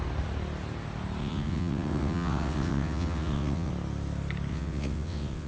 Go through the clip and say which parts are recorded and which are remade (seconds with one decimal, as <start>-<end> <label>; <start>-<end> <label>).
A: 0.0-1.2 recorded; 1.2-3.7 remade; 3.7-4.5 recorded; 4.5-5.5 remade